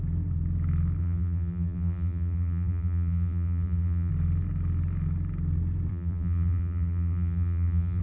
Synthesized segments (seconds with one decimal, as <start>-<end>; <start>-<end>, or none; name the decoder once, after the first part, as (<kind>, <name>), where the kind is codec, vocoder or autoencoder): 1.0-4.1 (vocoder, BigVGAN v2); 5.9-8.0